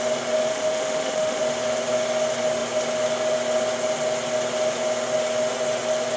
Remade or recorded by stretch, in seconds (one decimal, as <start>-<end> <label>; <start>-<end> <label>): 0.0-0.5 recorded; 0.5-1.4 remade; 1.4-6.2 recorded